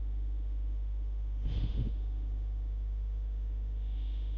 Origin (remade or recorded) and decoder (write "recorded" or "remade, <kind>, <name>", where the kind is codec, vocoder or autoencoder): remade, autoencoder, DAC-VAE